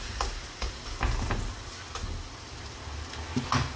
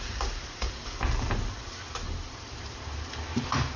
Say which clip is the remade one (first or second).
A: second